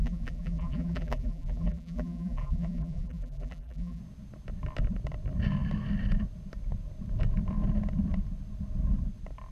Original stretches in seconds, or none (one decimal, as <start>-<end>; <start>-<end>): 4.0-9.5